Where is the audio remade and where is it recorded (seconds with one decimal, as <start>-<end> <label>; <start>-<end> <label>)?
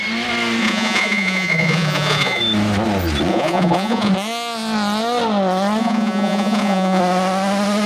0.0-0.6 recorded; 0.6-2.4 remade; 2.4-3.3 recorded; 3.3-4.1 remade; 4.1-5.8 recorded; 5.8-7.0 remade; 7.0-7.9 recorded